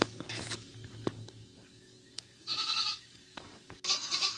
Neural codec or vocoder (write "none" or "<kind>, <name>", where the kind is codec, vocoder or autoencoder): codec, DAC